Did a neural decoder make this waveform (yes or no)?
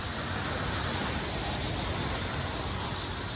no